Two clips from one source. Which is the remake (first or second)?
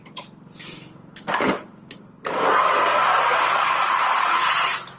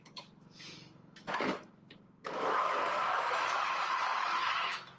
second